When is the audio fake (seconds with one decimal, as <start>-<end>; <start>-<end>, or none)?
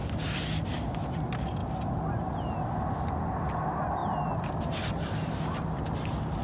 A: 0.0-0.9; 1.6-2.5